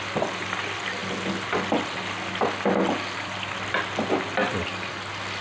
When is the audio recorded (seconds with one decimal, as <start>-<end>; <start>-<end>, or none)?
0.0-5.4